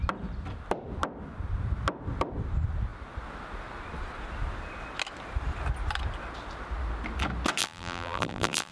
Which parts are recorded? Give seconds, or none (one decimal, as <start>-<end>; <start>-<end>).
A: 0.0-7.6